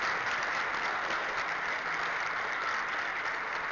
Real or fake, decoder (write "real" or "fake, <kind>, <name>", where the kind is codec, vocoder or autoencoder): real